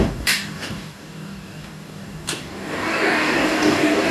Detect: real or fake fake